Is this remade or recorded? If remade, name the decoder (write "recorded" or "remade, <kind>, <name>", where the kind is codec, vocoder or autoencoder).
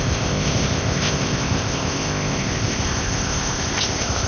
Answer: remade, codec, ZipCodec